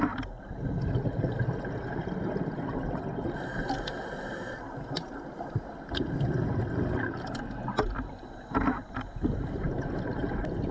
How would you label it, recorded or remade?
recorded